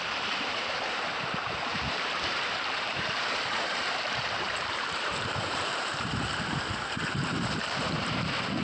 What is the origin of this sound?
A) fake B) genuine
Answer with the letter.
A